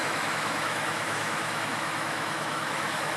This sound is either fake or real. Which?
fake